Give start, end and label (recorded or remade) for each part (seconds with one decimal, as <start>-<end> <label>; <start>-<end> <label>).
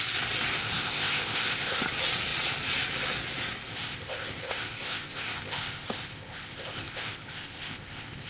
0.0-0.6 recorded; 0.6-1.8 remade; 1.8-3.7 recorded; 3.7-8.3 remade